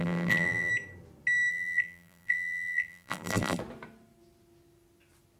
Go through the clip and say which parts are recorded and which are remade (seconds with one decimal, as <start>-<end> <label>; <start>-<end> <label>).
0.0-0.7 remade; 0.7-1.5 recorded; 1.5-3.6 remade; 3.6-5.4 recorded